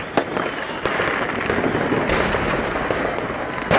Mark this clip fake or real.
real